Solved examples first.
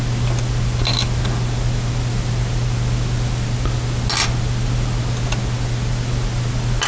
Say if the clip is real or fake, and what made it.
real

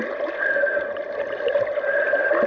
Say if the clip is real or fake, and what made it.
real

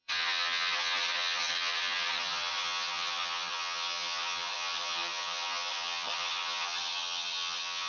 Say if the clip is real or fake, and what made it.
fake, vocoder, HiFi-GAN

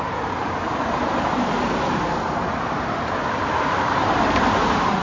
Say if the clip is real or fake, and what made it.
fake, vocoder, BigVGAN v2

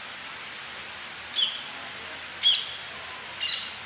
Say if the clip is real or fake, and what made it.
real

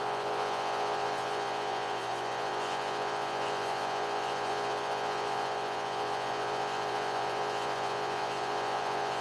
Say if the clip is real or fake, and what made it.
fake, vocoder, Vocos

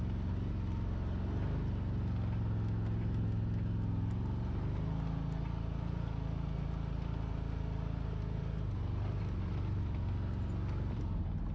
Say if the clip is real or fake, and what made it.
real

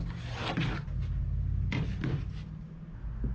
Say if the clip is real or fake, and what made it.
real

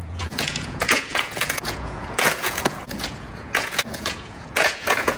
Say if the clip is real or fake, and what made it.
fake, vocoder, Vocos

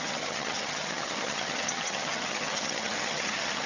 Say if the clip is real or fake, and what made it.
fake, vocoder, HiFi-GAN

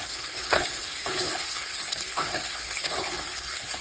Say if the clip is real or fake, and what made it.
fake, codec, HILCodec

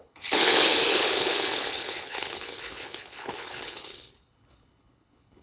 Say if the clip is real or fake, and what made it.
fake, codec, HILCodec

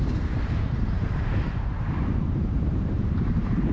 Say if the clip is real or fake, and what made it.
fake, vocoder, BigVGAN v2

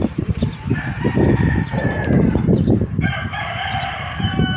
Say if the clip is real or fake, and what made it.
fake, vocoder, BigVGAN v2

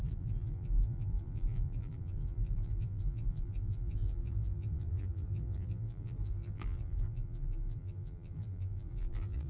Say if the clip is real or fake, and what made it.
fake, vocoder, BigVGAN v2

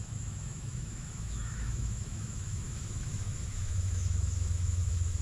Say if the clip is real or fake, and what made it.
fake, autoencoder, DAC-VAE